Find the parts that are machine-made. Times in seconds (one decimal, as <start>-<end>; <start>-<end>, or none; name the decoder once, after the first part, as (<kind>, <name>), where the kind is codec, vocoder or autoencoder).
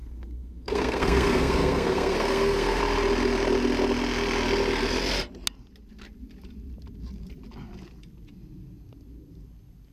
0.0-2.8 (codec, SNAC)